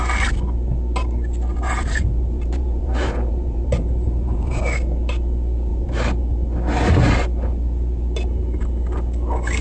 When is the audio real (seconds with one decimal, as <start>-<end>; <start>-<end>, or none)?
0.0-1.5; 4.6-5.7; 6.2-9.6

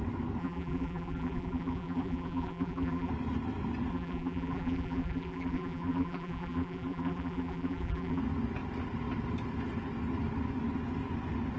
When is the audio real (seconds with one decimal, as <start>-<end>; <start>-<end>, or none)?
0.0-0.4; 3.1-3.9; 8.2-11.6